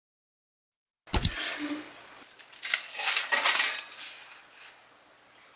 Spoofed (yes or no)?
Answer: no